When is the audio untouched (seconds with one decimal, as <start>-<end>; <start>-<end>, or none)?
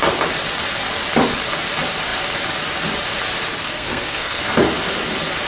0.0-3.6; 4.4-5.5